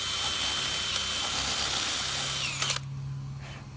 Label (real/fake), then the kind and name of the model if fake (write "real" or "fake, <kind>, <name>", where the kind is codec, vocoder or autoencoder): real